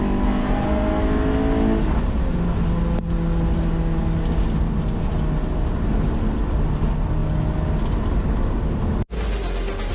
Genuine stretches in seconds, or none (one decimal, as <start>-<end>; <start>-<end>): 0.0-0.4; 1.0-9.9

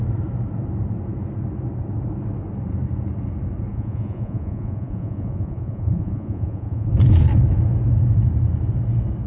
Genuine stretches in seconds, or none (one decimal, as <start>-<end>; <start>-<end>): 0.0-3.7; 6.9-9.3

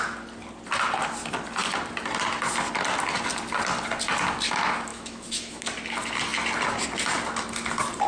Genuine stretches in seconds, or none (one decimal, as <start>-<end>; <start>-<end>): 0.0-4.9; 5.6-8.1

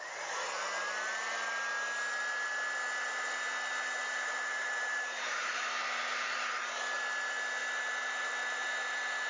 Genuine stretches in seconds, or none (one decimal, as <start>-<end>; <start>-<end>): 0.0-4.0; 5.6-9.3

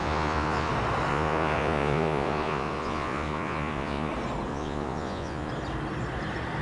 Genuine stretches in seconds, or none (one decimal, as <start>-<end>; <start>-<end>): 0.7-1.1; 4.1-4.5; 5.5-6.6